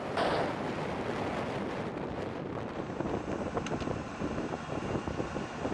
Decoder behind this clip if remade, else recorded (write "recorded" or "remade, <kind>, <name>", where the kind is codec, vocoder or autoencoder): recorded